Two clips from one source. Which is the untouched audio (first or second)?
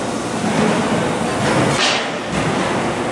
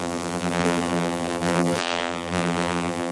first